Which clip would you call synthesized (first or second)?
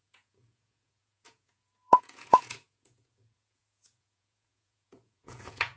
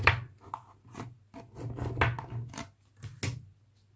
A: first